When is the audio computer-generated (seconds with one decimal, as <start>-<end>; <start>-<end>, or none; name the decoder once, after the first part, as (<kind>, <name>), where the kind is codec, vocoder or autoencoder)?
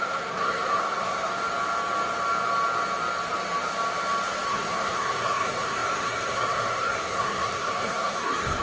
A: 0.0-1.3 (codec, SNAC); 4.5-8.6